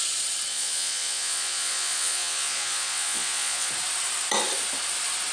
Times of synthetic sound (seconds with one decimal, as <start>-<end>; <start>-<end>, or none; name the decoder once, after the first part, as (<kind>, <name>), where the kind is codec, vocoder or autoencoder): 0.5-3.7 (vocoder, Vocos)

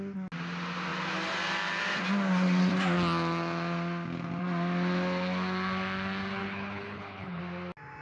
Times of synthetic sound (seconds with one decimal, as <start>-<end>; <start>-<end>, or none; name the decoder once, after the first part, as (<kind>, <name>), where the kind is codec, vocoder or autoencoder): 6.4-7.4 (codec, HILCodec)